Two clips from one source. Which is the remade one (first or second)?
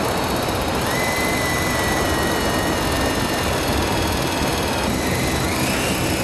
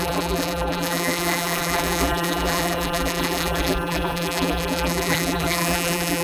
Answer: second